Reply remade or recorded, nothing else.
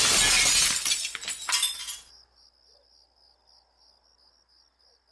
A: recorded